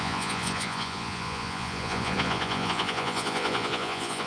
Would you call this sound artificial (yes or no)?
yes